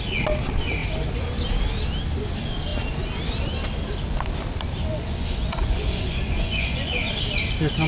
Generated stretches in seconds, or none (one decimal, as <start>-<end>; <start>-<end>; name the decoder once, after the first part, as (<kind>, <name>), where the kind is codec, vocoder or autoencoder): 4.9-7.1 (vocoder, Vocos)

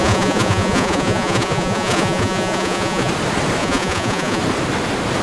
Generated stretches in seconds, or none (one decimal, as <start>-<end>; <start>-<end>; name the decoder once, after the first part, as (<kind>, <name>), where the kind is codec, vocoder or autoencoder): 0.0-3.1 (vocoder, Vocos); 3.6-4.4

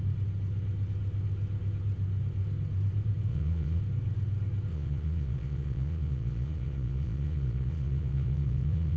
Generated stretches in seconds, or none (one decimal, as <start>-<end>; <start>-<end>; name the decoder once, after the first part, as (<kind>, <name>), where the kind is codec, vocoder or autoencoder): 3.3-3.8 (vocoder, Vocos); 4.7-9.0

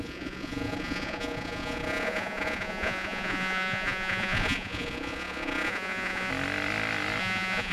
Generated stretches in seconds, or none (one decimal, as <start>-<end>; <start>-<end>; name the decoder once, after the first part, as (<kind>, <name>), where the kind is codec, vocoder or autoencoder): 0.0-6.3 (vocoder, Vocos); 7.2-7.7

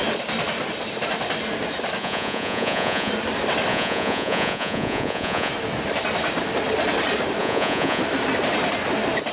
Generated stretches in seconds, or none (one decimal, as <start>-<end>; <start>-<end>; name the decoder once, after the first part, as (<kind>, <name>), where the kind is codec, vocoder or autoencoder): 2.0-3.1 (vocoder, Vocos); 3.7-5.5; 7.4-8.0

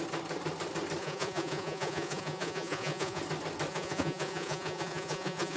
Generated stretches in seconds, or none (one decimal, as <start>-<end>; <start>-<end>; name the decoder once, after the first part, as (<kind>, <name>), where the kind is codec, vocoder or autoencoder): 1.0-3.2 (vocoder, Vocos); 3.7-5.6

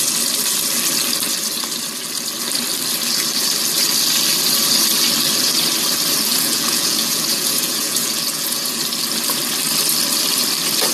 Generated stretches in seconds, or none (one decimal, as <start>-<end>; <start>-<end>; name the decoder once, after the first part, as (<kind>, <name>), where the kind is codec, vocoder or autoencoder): 6.3-8.8 (vocoder, Vocos)

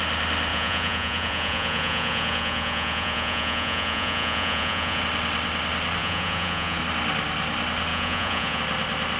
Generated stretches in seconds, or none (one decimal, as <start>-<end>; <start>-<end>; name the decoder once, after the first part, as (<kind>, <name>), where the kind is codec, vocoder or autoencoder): 0.5-5.0 (vocoder, Vocos); 6.0-6.8; 7.9-8.6